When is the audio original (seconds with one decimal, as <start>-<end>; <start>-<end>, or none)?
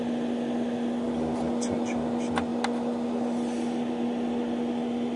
0.0-5.2